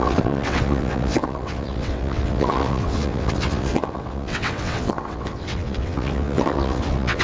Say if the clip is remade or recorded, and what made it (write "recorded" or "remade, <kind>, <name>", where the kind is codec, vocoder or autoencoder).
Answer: remade, vocoder, WaveNeXt